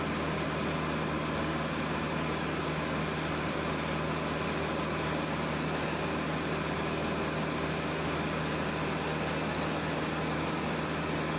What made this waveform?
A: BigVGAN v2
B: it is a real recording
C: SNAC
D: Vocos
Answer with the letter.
B